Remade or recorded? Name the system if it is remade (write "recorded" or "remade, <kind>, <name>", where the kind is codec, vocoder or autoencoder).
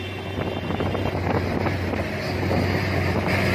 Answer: recorded